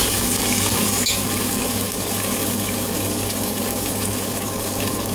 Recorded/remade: remade